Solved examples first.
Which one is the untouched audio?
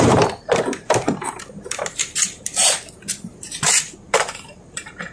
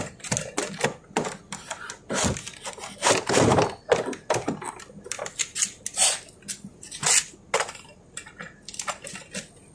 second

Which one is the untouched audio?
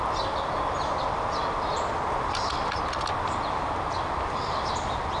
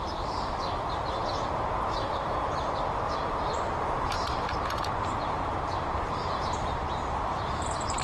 first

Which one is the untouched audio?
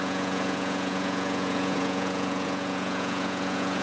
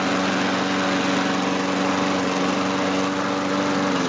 second